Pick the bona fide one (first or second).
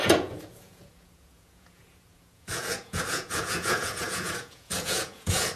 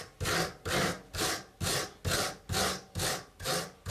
second